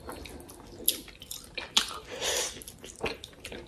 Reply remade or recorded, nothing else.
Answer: recorded